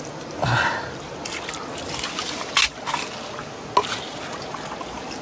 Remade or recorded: recorded